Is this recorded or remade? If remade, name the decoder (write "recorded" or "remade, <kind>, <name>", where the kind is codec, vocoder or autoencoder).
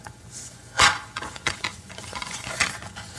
remade, vocoder, Vocos